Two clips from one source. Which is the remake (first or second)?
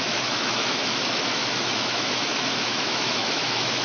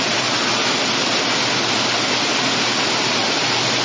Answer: first